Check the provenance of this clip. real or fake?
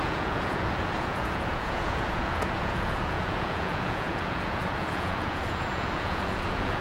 fake